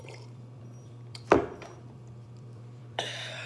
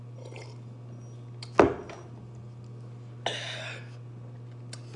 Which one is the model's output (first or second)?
first